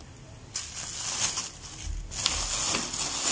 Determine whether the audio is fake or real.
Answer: real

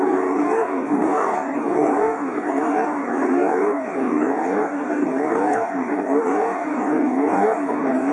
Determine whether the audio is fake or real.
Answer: fake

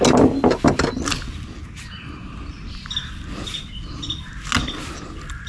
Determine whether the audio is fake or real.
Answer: real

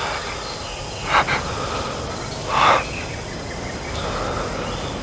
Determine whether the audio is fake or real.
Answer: real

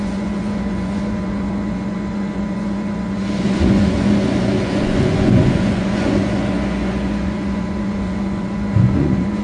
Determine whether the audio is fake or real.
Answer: fake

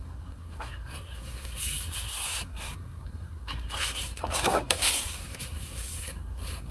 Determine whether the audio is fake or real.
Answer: fake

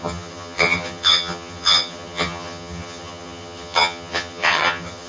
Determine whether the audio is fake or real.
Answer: fake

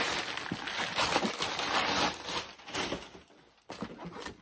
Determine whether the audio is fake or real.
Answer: real